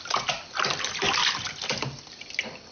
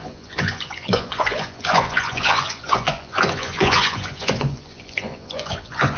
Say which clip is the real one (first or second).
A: first